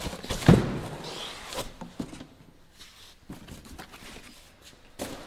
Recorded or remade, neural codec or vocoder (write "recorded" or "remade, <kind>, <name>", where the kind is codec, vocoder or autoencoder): recorded